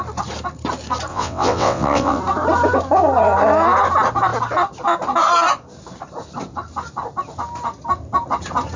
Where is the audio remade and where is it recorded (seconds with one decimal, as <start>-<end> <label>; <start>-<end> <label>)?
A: 0.0-1.1 recorded; 1.1-2.2 remade; 2.2-8.8 recorded